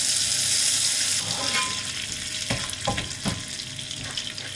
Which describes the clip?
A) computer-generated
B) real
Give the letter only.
B